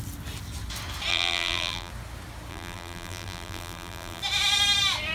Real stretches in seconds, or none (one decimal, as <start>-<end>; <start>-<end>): 0.0-1.1; 1.9-2.5; 4.2-5.1

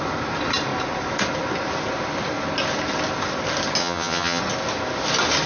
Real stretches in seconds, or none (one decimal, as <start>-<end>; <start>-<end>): 0.0-3.8; 4.4-5.5

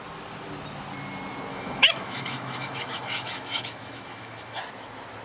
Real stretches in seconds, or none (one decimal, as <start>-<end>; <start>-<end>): 0.0-1.5; 4.6-5.2